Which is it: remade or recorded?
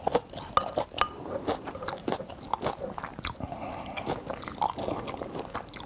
recorded